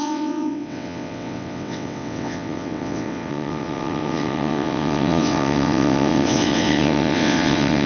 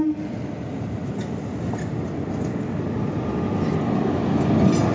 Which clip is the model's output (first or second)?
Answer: first